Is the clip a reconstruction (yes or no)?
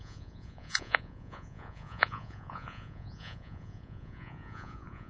yes